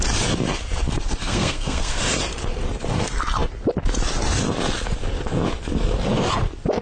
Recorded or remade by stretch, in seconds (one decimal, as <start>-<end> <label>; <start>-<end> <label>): 0.0-1.2 recorded; 1.2-2.0 remade; 2.0-6.8 recorded